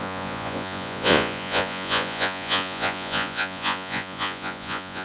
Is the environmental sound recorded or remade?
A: remade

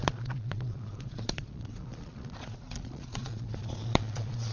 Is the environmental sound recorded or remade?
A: remade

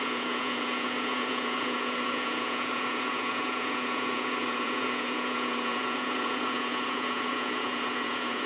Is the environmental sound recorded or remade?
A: remade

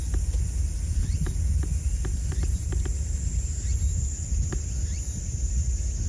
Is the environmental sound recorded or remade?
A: recorded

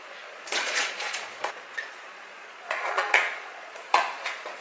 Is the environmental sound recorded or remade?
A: remade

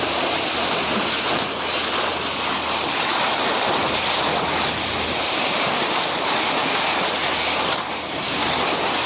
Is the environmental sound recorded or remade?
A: recorded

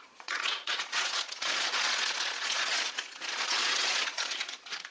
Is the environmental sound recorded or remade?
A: remade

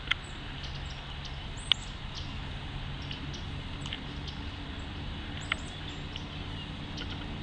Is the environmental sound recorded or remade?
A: recorded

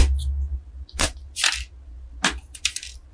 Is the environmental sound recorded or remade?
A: recorded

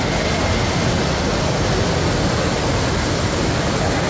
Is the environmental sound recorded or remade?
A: recorded